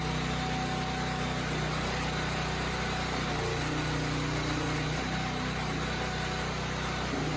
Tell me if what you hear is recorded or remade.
recorded